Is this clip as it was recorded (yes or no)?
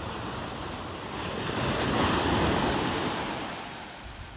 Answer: yes